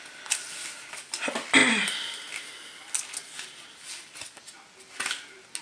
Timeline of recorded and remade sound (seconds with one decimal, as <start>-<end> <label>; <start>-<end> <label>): 0.0-5.6 recorded